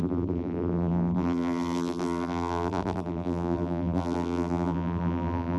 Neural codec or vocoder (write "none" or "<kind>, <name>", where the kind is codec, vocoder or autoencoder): vocoder, BigVGAN v2